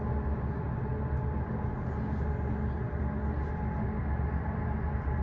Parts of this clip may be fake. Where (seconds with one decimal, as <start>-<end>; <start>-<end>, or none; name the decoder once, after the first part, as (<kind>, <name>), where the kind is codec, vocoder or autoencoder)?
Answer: none